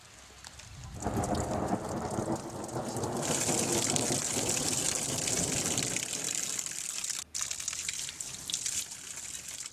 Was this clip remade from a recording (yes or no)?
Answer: no